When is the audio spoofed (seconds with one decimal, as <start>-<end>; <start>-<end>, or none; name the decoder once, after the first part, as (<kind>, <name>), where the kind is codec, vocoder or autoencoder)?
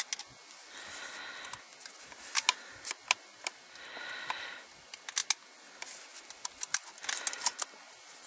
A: none